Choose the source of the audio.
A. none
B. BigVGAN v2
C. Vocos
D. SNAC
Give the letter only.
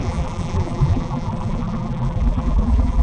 B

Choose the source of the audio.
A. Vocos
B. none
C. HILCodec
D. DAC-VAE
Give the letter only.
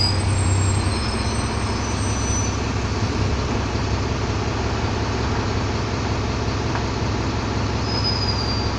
B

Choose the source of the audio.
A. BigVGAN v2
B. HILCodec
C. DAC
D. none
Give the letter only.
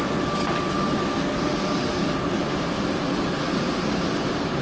D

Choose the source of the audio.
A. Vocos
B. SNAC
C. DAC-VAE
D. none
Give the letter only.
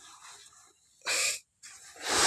D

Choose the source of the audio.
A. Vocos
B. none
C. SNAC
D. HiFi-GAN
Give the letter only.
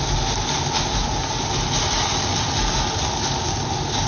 B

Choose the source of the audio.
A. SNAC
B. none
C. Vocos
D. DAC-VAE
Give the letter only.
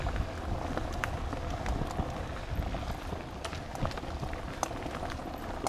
B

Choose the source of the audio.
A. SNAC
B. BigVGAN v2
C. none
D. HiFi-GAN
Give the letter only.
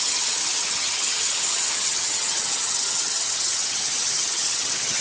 D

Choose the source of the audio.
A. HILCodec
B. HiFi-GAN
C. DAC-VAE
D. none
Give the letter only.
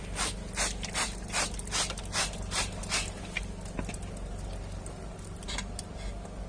D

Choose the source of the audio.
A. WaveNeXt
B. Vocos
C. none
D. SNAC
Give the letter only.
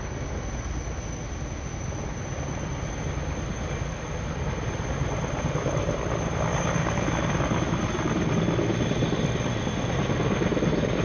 C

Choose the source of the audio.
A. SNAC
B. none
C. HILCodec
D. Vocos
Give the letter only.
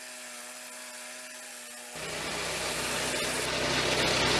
B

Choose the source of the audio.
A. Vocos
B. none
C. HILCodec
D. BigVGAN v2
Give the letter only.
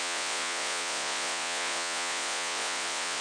A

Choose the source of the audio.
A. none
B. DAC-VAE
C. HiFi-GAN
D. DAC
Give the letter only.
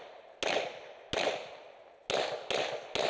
A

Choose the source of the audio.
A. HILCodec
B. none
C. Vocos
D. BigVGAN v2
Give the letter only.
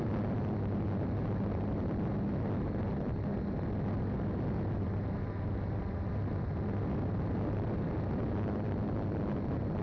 B